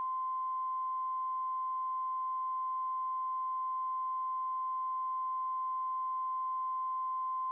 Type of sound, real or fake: real